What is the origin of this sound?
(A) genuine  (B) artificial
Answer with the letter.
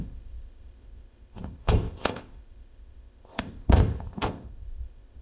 B